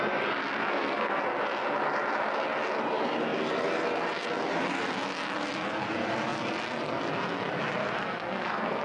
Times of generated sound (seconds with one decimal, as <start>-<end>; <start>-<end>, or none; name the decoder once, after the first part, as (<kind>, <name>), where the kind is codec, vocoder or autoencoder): 0.6-1.2 (codec, SNAC); 7.8-8.8